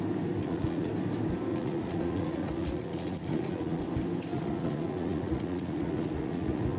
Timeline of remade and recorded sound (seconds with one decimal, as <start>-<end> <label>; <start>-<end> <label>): 0.0-0.4 recorded; 0.4-0.9 remade; 0.9-1.5 recorded; 1.5-3.8 remade; 3.8-4.3 recorded; 4.3-6.8 remade

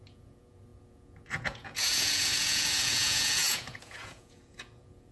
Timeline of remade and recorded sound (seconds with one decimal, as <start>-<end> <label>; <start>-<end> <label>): 0.0-5.1 remade

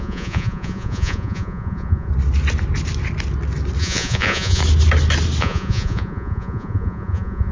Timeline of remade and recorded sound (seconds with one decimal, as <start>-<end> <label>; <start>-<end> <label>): 0.0-2.1 remade; 2.1-3.8 recorded; 3.8-4.6 remade; 4.6-5.4 recorded; 5.4-7.5 remade

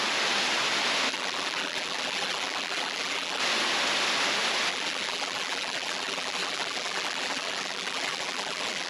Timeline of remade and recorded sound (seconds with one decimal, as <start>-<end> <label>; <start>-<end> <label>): 0.0-1.1 recorded; 1.1-3.4 remade; 3.4-4.7 recorded; 4.7-8.9 remade

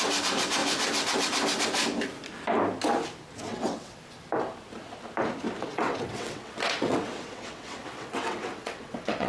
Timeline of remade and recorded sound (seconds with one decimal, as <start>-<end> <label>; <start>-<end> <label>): 0.0-3.5 recorded; 3.5-4.0 remade; 4.0-5.6 recorded; 5.6-9.3 remade

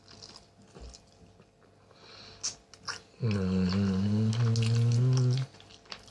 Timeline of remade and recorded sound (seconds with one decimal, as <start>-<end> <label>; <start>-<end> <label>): 0.0-6.1 recorded